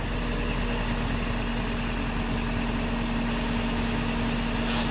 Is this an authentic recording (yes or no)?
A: yes